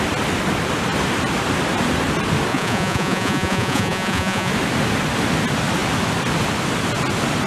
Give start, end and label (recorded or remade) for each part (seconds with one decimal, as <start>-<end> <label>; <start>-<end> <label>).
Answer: 0.0-2.5 recorded; 2.5-4.5 remade; 4.5-7.5 recorded